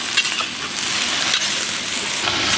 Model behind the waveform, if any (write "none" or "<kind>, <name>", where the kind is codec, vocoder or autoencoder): none